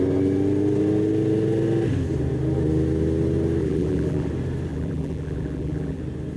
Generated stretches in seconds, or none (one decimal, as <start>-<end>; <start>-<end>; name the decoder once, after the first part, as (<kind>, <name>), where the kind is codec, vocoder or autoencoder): 3.6-4.3 (vocoder, BigVGAN v2); 4.7-6.0